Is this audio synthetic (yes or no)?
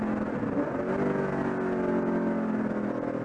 no